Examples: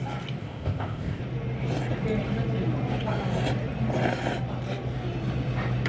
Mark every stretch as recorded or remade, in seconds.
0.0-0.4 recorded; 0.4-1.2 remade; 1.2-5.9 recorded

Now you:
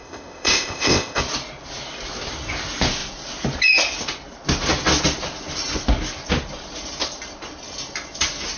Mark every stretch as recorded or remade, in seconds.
0.0-1.2 remade; 1.2-8.6 recorded

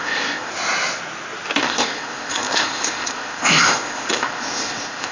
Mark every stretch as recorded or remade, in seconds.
0.0-0.5 remade; 0.5-1.6 recorded; 1.6-5.1 remade